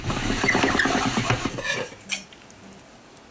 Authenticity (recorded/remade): recorded